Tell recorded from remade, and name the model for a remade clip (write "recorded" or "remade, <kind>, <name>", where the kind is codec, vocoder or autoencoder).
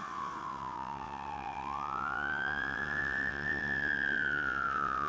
remade, vocoder, WaveNeXt